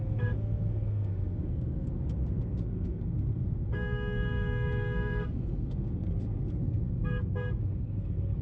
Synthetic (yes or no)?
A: yes